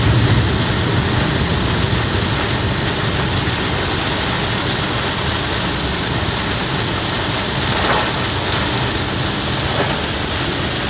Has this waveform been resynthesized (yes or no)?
no